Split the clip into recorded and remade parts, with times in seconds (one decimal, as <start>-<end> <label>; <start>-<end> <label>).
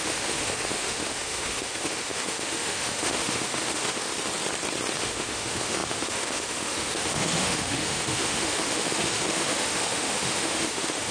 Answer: 0.0-4.1 remade; 4.1-5.0 recorded; 5.0-11.1 remade